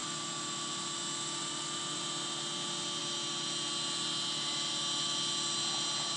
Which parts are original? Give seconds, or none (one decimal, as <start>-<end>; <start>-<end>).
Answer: 0.0-6.2